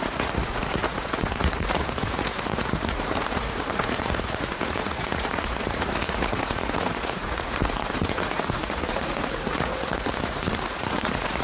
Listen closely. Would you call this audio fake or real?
fake